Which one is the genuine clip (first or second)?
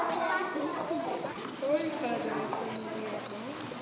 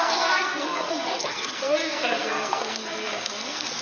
first